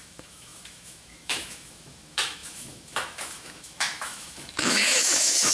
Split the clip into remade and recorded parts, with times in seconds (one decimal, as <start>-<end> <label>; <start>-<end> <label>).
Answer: 0.0-5.5 remade